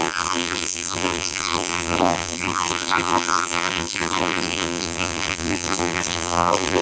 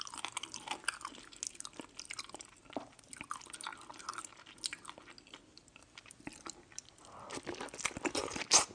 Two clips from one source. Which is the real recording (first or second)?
second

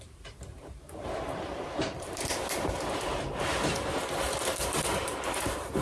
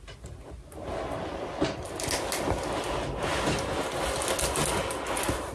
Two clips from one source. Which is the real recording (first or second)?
second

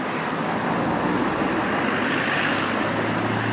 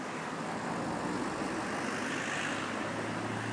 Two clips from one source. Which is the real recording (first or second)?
second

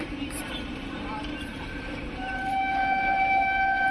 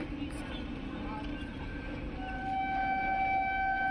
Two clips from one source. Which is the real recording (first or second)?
second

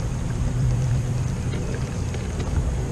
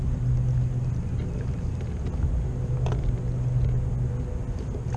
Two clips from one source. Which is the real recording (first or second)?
second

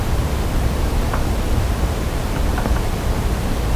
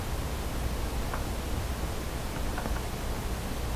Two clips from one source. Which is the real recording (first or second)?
second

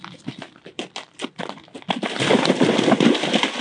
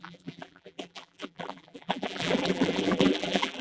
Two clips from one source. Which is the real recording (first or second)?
first